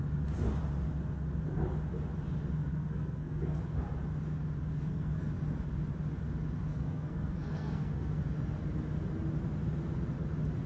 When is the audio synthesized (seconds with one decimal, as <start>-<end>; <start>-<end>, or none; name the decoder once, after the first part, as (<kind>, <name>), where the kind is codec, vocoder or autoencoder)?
2.7-3.6 (codec, SNAC); 4.7-5.3; 6.7-8.2